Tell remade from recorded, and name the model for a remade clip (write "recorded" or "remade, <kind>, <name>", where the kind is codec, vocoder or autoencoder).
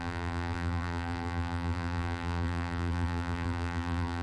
remade, vocoder, BigVGAN v2